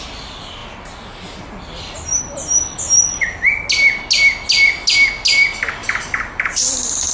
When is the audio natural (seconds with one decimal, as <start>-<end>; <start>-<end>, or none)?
0.0-7.1